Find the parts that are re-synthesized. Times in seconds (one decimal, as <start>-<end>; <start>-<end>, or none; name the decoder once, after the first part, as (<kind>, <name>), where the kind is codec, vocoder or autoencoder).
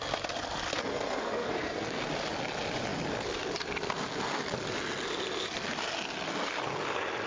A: 0.9-2.0 (codec, SNAC)